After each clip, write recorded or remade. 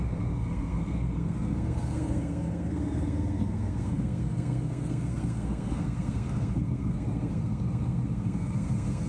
remade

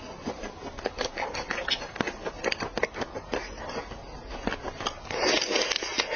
recorded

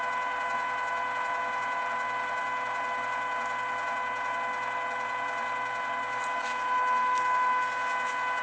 recorded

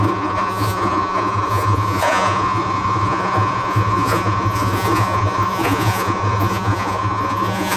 remade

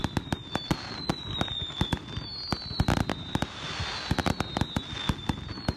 recorded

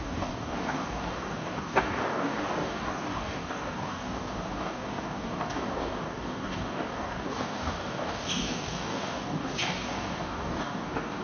remade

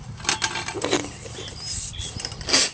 recorded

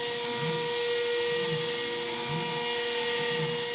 recorded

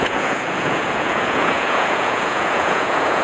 remade